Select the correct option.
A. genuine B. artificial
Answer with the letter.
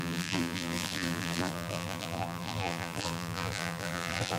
B